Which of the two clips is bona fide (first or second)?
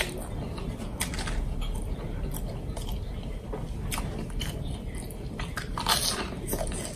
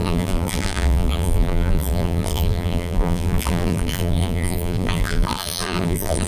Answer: first